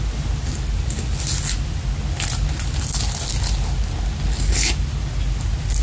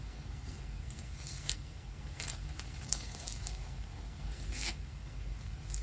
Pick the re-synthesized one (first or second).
second